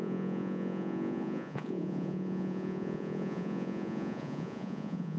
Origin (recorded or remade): remade